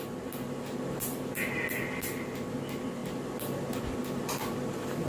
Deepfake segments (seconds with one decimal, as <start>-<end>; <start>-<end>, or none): none